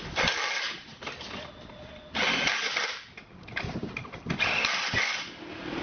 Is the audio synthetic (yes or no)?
no